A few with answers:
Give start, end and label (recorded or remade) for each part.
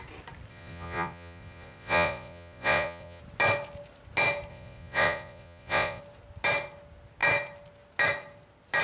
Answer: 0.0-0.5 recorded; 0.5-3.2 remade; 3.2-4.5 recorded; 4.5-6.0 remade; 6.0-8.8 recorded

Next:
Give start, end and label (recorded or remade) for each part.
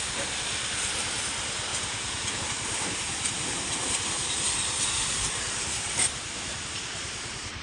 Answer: 0.0-1.7 recorded; 1.7-2.4 remade; 2.4-7.6 recorded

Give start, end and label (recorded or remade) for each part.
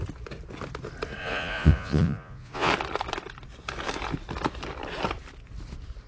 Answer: 0.0-1.2 recorded; 1.2-2.7 remade; 2.7-6.1 recorded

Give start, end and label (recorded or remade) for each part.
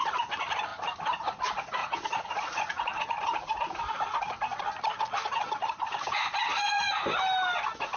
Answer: 0.0-1.8 recorded; 1.8-3.8 remade; 3.8-6.5 recorded; 6.5-7.0 remade; 7.0-8.0 recorded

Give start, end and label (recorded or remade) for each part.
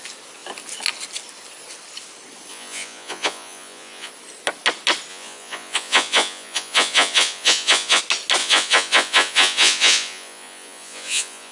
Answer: 0.0-2.5 recorded; 2.5-4.1 remade; 4.1-5.1 recorded; 5.1-8.0 remade; 8.0-8.4 recorded; 8.4-11.5 remade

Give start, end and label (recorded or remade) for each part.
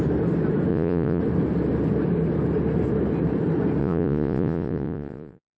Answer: 0.0-0.7 recorded; 0.7-1.2 remade; 1.2-3.8 recorded; 3.8-5.6 remade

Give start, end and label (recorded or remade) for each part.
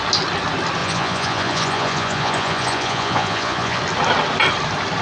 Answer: 0.0-0.8 recorded; 0.8-3.8 remade; 3.8-5.0 recorded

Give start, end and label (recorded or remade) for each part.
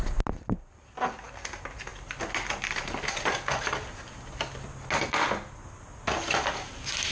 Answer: 0.0-7.1 recorded